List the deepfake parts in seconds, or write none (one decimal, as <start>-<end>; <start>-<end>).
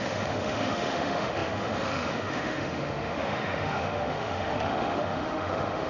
0.0-5.9